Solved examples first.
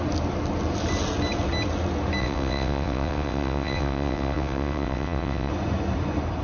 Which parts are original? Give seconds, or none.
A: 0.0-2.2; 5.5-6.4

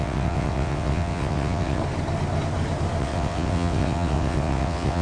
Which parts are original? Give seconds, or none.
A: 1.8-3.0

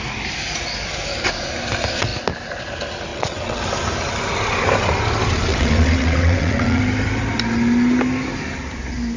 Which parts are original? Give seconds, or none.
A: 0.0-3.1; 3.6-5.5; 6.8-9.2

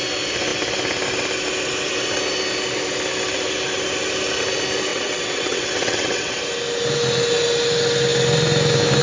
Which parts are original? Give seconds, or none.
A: 0.0-4.9; 6.4-9.0

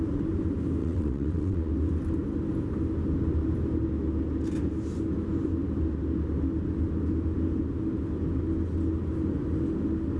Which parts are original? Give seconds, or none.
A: 0.0-0.8; 1.7-10.2